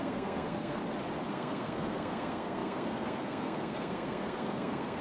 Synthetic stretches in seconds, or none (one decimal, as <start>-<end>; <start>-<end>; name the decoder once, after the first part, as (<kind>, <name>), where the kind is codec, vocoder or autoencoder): 0.0-0.8 (codec, SNAC); 1.3-5.0